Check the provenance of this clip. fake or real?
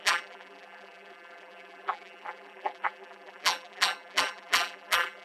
fake